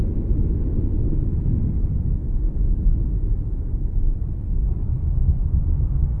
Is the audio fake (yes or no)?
no